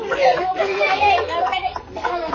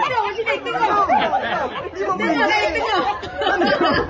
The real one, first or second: second